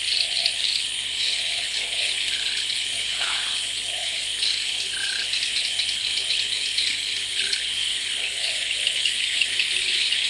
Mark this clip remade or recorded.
remade